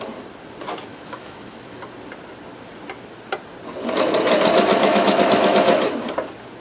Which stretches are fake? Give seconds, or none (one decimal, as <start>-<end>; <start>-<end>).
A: 0.9-1.8; 4.7-6.1